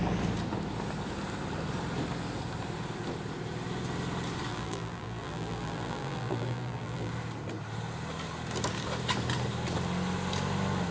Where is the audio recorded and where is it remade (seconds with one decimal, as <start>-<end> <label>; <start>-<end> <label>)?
0.0-4.5 recorded; 4.5-7.1 remade; 7.1-10.9 recorded